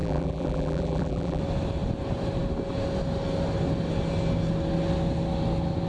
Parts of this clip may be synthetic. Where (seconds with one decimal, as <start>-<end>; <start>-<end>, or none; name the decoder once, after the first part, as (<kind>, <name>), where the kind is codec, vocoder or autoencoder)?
0.0-1.4 (vocoder, BigVGAN v2)